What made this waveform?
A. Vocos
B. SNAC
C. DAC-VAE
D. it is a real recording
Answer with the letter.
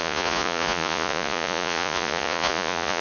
A